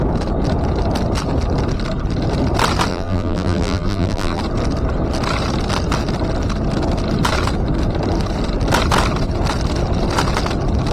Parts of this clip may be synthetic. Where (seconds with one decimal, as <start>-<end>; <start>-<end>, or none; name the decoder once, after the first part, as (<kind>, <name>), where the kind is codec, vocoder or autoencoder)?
2.9-4.4 (vocoder, BigVGAN v2)